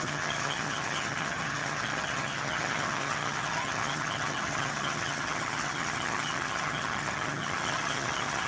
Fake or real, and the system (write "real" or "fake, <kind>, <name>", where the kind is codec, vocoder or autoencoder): fake, vocoder, HiFi-GAN